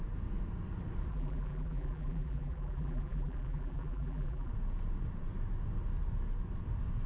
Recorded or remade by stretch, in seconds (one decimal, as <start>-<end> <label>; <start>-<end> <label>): 0.0-1.1 recorded; 1.1-4.5 remade; 4.5-7.1 recorded